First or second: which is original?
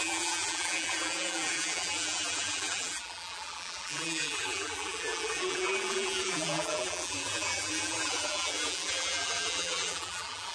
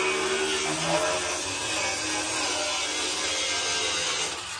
second